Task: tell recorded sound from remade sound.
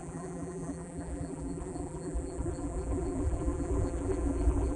remade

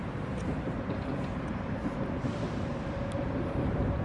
remade